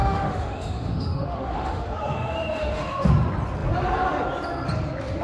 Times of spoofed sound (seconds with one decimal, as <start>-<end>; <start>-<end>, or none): 0.0-3.1